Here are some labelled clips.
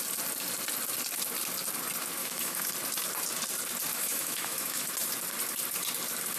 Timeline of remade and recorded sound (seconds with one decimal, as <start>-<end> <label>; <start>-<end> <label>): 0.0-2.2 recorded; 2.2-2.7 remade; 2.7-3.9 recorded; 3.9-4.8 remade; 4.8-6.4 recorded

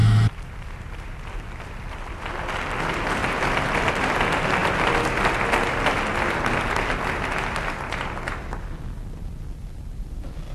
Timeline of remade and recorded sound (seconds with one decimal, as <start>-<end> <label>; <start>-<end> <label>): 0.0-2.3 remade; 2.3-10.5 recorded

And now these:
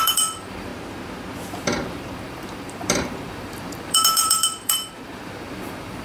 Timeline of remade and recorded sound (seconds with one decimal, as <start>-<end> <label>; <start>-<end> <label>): 0.0-0.7 remade; 0.7-1.5 recorded; 1.5-6.0 remade

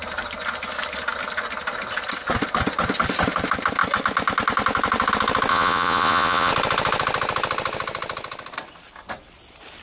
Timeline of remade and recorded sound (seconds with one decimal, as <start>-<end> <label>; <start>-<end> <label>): 0.0-5.5 recorded; 5.5-6.5 remade; 6.5-9.8 recorded